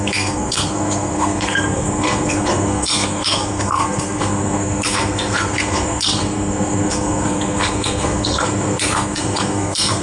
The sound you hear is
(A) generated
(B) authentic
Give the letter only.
A